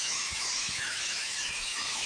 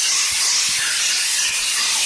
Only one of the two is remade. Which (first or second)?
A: first